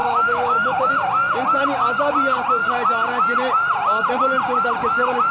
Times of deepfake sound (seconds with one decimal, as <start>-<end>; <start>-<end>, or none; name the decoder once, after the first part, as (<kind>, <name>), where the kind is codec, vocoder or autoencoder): 0.0-0.9 (autoencoder, DAC-VAE)